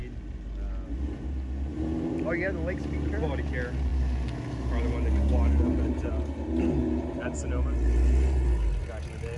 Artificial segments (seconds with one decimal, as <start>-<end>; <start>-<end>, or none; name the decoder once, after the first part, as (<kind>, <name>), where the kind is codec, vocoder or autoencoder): none